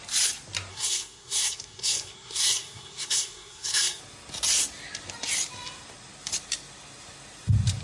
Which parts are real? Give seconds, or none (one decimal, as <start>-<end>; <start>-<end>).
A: 0.0-0.7; 4.0-7.8